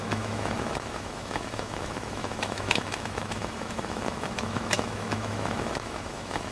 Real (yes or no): no